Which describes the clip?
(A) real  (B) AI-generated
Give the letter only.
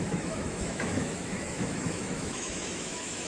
B